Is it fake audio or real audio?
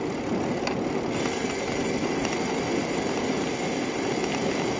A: real